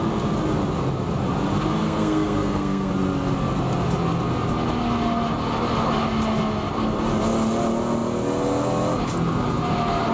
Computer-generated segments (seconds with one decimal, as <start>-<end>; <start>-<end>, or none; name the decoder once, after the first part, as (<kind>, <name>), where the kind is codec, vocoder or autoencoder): 1.8-2.9 (codec, SNAC)